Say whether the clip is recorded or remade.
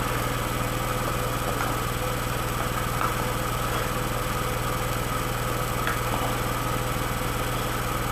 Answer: recorded